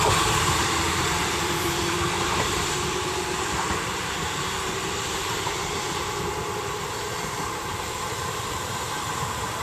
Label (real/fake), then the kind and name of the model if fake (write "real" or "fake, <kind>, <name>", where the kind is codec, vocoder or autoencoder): fake, vocoder, BigVGAN v2